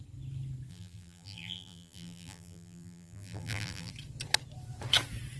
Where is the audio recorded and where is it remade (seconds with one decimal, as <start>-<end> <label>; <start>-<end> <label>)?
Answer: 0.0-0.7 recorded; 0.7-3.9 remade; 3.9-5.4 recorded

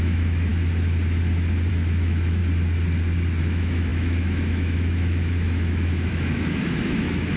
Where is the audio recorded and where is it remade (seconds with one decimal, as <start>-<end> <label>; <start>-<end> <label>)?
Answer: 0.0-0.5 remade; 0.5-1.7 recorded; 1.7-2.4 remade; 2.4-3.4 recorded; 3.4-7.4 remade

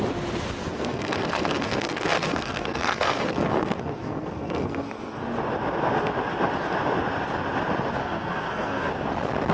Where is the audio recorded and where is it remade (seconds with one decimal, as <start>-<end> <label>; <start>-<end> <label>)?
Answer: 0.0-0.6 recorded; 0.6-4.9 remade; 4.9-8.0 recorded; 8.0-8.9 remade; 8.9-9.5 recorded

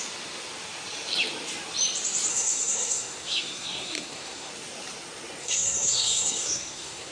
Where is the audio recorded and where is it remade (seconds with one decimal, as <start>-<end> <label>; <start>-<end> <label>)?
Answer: 0.0-2.3 recorded; 2.3-4.5 remade; 4.5-5.4 recorded; 5.4-7.1 remade